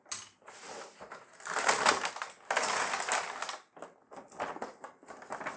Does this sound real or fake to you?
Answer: real